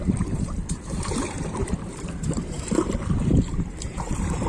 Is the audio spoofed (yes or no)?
yes